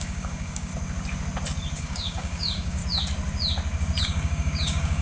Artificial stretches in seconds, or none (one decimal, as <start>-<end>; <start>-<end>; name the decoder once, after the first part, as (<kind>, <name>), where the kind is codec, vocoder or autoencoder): 0.0-0.7 (codec, DAC); 1.8-2.8; 4.0-5.0